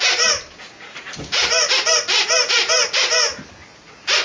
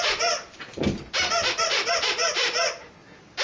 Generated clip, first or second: second